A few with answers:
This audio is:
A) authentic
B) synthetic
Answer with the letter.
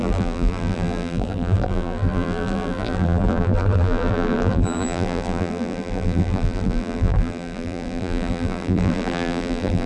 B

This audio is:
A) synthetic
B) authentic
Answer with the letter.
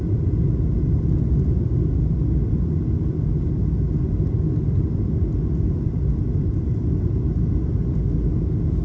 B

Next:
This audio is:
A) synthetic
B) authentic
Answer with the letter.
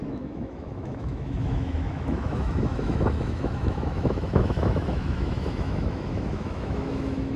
A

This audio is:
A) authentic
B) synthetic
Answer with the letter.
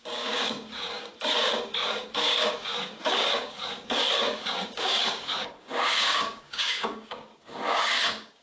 B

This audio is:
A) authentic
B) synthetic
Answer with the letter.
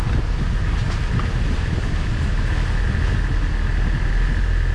A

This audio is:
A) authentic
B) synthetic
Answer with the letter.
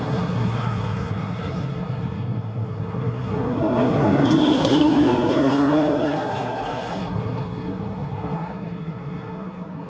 B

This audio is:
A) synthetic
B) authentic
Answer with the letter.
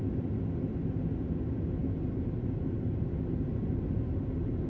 B